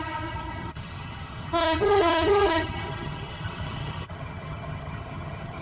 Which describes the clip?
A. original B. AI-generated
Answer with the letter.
B